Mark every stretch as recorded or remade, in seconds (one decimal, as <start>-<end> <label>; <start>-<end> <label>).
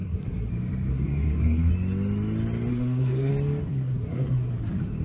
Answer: 0.0-0.5 remade; 0.5-0.9 recorded; 0.9-1.7 remade; 1.7-2.7 recorded; 2.7-3.3 remade; 3.3-3.7 recorded; 3.7-4.5 remade; 4.5-5.0 recorded